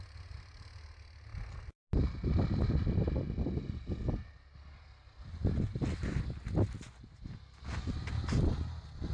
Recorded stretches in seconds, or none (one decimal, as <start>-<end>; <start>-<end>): 0.0-9.1